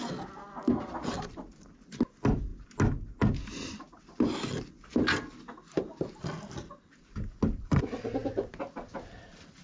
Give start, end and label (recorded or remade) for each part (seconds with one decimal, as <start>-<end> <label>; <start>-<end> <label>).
0.0-9.6 recorded